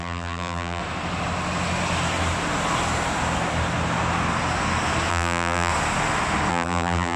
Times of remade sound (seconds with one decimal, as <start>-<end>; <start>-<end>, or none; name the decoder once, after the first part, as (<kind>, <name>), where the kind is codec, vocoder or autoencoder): 0.0-0.8 (vocoder, BigVGAN v2); 5.1-5.7; 6.5-7.2